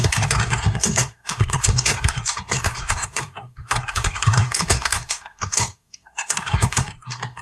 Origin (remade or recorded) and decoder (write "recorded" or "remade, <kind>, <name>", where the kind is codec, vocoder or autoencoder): remade, codec, SNAC